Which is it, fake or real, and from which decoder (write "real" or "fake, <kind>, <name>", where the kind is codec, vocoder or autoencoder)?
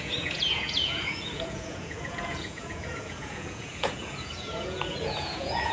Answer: fake, vocoder, Vocos